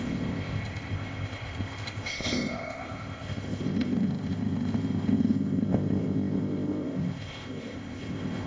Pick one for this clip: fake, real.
fake